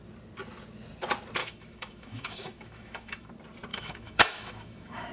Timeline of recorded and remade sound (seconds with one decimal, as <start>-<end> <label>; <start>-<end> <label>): 0.0-1.4 recorded; 1.4-3.3 remade; 3.3-3.7 recorded; 3.7-5.1 remade